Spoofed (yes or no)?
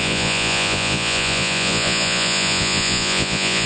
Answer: yes